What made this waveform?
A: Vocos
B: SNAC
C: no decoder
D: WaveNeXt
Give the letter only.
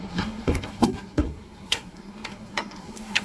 B